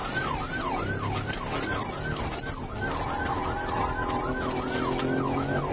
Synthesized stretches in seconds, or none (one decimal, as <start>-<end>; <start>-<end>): none